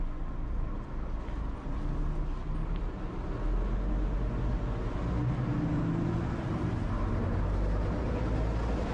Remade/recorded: recorded